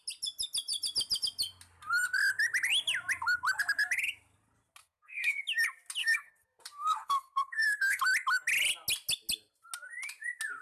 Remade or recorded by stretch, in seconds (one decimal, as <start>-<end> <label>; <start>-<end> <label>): 0.0-4.8 recorded; 4.8-5.4 remade; 5.4-6.0 recorded; 6.0-8.0 remade; 8.0-10.6 recorded